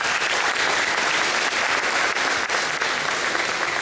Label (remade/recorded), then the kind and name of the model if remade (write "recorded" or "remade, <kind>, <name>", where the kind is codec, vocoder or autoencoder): recorded